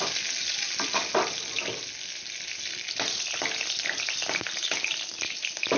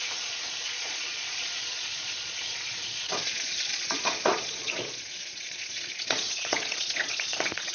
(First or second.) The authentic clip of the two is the first